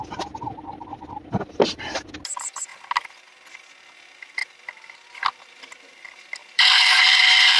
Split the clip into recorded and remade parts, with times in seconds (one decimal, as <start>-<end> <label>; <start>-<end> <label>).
0.0-6.4 recorded; 6.4-7.6 remade